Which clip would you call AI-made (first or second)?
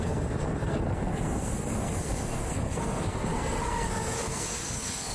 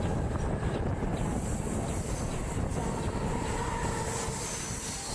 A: first